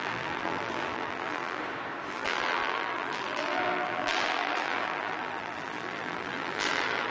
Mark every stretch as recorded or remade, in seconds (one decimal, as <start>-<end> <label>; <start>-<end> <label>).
0.0-1.6 remade; 1.6-2.1 recorded; 2.1-7.1 remade